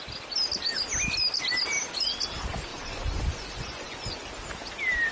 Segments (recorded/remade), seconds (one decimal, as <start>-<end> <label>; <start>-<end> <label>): 0.0-2.7 recorded; 2.7-4.2 remade; 4.2-5.1 recorded